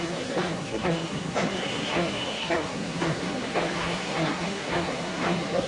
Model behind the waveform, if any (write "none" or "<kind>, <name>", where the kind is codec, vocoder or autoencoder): codec, SNAC